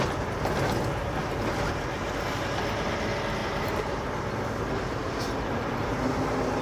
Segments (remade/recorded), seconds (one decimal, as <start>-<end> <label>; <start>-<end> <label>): 0.0-3.4 recorded; 3.4-4.6 remade; 4.6-6.6 recorded